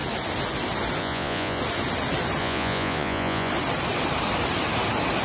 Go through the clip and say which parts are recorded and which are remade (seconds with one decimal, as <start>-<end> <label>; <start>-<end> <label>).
0.0-1.0 recorded; 1.0-1.6 remade; 1.6-2.4 recorded; 2.4-3.5 remade; 3.5-5.2 recorded